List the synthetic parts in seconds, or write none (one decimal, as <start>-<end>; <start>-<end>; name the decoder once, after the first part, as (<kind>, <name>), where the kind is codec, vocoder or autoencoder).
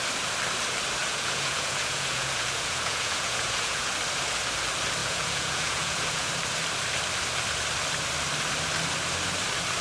1.0-3.9 (vocoder, Vocos); 5.0-6.3